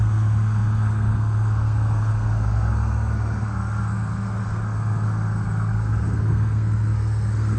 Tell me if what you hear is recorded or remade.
remade